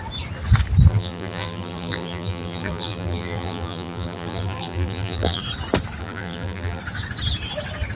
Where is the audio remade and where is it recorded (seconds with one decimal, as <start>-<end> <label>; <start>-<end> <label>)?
0.0-0.9 recorded; 0.9-5.4 remade; 5.4-6.0 recorded; 6.0-6.8 remade; 6.8-8.0 recorded